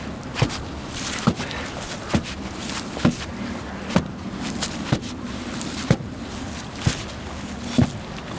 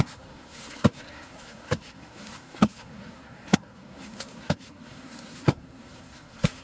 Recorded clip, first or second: first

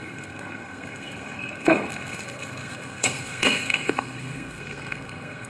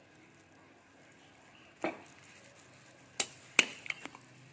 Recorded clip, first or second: second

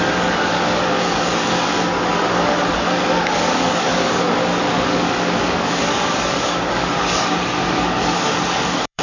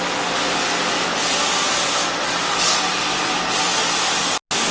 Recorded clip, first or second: second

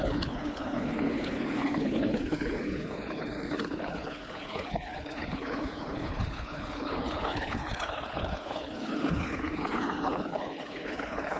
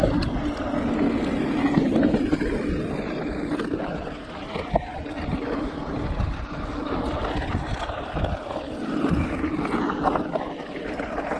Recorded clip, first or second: second